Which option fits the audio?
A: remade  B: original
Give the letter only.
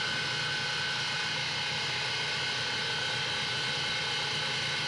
B